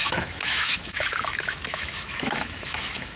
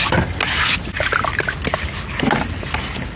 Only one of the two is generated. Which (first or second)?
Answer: first